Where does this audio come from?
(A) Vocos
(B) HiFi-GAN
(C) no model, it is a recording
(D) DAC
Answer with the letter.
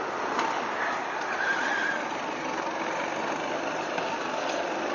C